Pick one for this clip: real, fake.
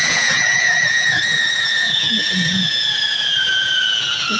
fake